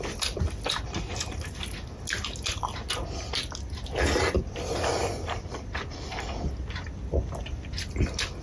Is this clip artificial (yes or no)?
no